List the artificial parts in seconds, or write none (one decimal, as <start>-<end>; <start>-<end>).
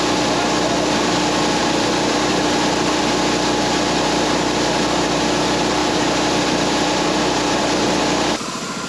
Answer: 1.6-3.0; 5.8-8.0